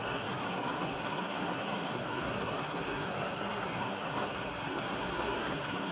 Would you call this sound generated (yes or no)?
yes